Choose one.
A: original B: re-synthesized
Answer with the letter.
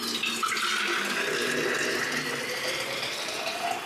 A